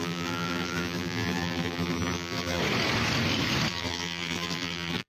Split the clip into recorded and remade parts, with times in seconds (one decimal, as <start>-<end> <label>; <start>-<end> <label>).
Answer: 0.0-2.6 remade; 2.6-3.7 recorded; 3.7-5.1 remade